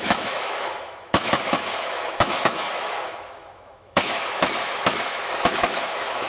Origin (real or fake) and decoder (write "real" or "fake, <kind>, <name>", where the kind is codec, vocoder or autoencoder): fake, autoencoder, DAC-VAE